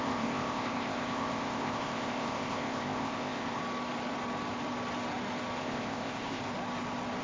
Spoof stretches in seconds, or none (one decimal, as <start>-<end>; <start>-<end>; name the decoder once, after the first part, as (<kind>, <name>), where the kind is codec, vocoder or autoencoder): 0.0-3.6 (codec, ZipCodec); 5.6-6.4